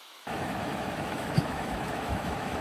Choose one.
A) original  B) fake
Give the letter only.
B